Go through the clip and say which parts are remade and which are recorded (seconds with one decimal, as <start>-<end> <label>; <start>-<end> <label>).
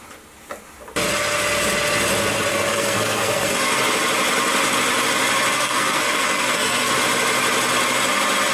0.0-2.5 recorded; 2.5-3.9 remade; 3.9-5.5 recorded; 5.5-6.9 remade; 6.9-8.5 recorded